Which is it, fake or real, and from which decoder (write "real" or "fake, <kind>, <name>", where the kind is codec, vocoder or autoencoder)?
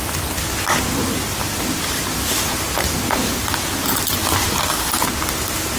real